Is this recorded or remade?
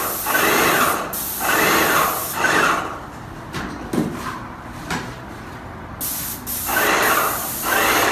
recorded